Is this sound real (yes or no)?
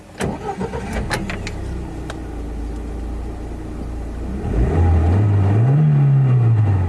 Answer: yes